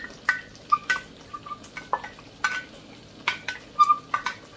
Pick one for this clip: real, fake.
real